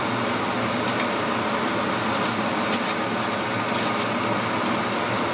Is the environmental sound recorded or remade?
recorded